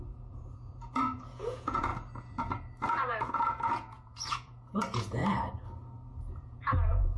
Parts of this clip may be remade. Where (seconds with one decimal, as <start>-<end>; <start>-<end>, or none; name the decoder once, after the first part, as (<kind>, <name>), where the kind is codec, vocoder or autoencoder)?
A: 0.0-1.9 (vocoder, Vocos); 3.2-5.2; 6.1-7.2